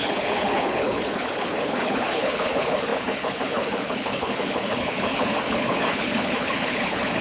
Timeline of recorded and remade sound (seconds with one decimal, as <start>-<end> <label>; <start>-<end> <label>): 0.0-7.2 remade